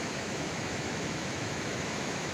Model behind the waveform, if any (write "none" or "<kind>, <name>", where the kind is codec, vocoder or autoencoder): autoencoder, DAC-VAE